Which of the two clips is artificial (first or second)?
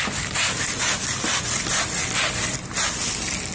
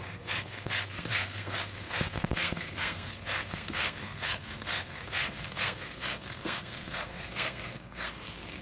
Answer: second